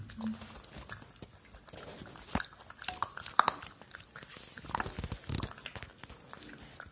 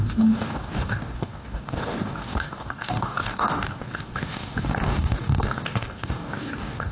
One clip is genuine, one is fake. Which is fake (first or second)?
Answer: second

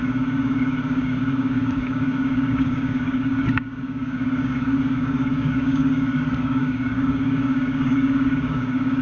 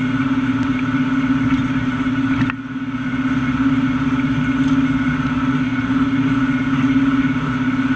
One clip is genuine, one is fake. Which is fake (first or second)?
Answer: first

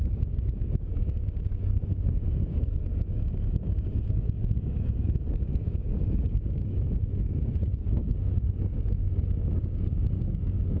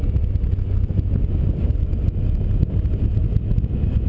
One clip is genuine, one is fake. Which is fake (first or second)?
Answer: first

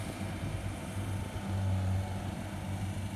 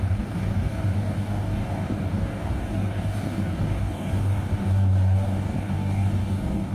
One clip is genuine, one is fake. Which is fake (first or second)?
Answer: second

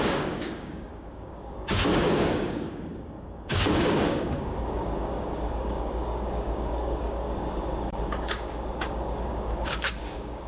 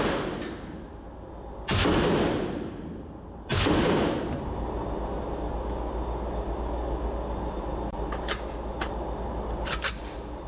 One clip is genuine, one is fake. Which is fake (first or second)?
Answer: first